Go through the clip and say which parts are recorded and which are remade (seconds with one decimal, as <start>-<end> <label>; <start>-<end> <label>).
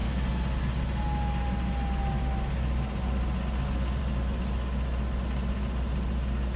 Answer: 0.0-6.6 recorded